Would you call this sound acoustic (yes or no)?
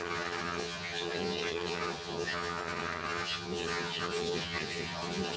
no